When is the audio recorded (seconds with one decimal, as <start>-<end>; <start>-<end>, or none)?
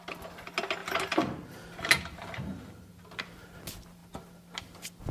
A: 0.0-0.8; 2.0-5.1